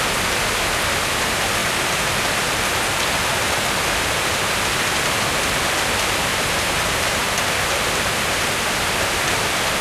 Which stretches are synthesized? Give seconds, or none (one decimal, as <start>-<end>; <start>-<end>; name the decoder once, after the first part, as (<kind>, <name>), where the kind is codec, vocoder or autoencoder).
1.6-4.4 (vocoder, BigVGAN v2); 6.3-7.3